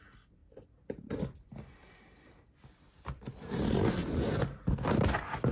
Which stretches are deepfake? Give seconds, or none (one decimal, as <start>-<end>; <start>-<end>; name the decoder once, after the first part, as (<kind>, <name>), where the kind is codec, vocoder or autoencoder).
none